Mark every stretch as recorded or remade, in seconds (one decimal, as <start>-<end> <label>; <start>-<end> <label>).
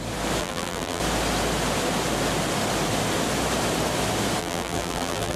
0.0-0.4 recorded; 0.4-1.0 remade; 1.0-4.4 recorded; 4.4-5.4 remade